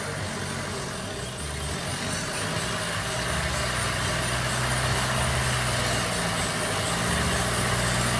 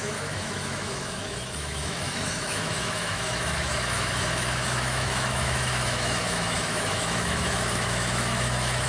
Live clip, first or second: first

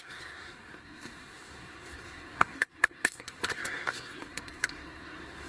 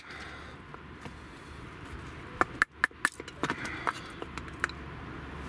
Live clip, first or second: second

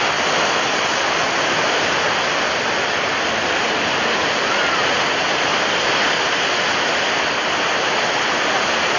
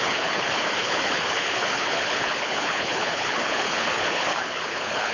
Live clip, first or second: first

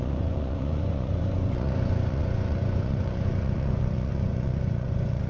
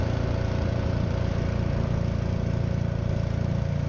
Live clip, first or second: second